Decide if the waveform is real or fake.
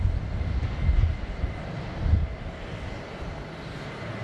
real